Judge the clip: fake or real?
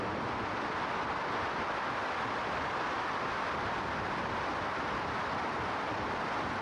real